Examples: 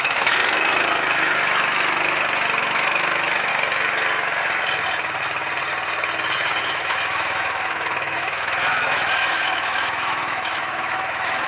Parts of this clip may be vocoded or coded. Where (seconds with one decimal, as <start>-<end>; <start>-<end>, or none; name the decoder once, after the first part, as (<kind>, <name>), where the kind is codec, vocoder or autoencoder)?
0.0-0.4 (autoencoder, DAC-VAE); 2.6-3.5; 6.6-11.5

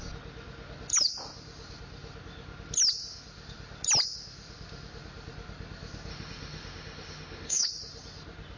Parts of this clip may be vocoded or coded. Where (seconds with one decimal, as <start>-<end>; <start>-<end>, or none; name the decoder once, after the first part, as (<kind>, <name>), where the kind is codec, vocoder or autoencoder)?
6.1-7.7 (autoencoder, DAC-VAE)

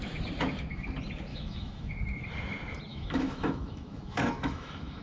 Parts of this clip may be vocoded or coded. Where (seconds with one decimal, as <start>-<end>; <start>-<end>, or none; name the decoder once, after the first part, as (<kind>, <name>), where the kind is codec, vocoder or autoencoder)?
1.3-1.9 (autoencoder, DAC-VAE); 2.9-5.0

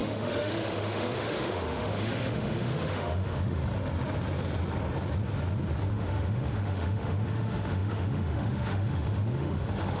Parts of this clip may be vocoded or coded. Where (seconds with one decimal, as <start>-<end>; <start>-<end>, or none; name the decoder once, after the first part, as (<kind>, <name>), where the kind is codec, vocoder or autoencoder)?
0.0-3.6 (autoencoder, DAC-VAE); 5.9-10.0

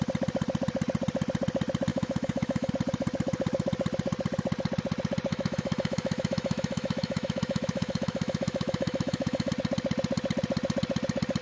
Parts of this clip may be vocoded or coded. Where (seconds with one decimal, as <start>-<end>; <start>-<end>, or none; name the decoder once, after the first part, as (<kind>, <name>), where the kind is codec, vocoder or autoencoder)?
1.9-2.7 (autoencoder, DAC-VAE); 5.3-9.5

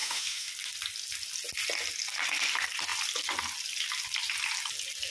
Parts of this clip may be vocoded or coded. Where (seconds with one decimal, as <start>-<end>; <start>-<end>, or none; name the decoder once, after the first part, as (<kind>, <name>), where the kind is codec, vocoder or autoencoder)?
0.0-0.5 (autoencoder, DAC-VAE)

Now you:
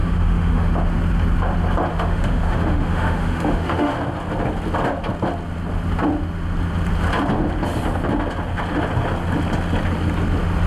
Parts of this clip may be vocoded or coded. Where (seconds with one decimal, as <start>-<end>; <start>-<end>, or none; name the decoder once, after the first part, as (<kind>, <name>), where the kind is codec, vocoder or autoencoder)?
0.0-0.7 (autoencoder, DAC-VAE); 1.9-3.9

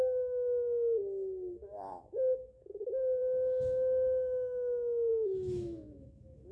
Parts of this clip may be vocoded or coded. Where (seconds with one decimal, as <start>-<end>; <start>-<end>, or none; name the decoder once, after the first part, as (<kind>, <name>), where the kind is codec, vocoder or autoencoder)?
0.0-3.2 (autoencoder, DAC-VAE); 5.1-6.5